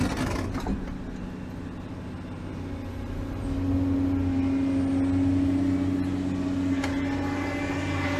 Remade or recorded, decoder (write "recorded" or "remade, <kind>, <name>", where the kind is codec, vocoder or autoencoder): recorded